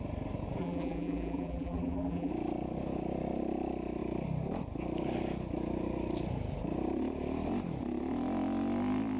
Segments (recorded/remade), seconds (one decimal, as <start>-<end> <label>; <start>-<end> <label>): 0.0-0.6 recorded; 0.6-2.3 remade; 2.3-9.2 recorded